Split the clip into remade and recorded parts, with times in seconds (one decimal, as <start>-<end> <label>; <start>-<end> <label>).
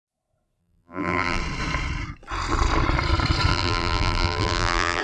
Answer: 0.0-0.6 recorded; 0.6-1.4 remade; 1.4-3.5 recorded; 3.5-5.0 remade